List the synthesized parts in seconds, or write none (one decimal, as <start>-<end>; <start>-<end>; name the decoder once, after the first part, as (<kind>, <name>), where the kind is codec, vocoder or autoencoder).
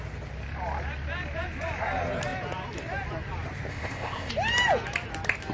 3.7-4.3 (codec, ZipCodec)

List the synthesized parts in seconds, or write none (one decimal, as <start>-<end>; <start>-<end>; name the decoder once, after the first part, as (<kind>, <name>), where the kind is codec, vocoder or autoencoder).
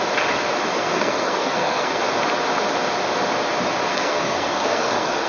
0.7-2.0 (codec, SNAC); 3.9-5.3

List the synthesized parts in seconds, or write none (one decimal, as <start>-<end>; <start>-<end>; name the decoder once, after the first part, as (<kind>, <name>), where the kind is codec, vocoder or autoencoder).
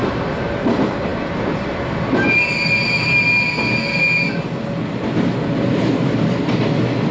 0.0-0.5 (vocoder, BigVGAN v2); 1.1-3.3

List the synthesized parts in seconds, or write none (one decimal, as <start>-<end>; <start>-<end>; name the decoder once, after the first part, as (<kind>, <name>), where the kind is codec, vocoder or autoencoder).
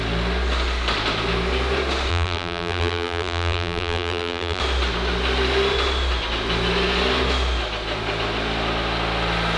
2.1-4.6 (vocoder, BigVGAN v2)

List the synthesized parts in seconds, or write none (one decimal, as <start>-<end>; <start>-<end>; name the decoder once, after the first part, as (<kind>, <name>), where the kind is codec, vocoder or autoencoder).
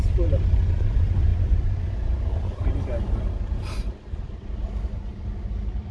none